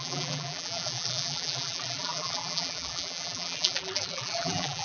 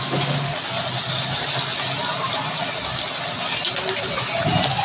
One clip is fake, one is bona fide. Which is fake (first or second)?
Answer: first